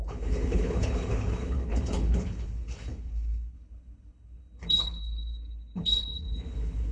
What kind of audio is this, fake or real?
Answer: fake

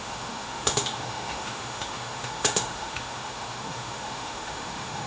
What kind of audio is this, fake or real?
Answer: fake